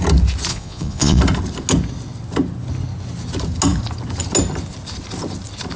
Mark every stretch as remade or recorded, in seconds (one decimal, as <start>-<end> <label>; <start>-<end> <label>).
0.0-0.5 recorded; 0.5-1.2 remade; 1.2-5.8 recorded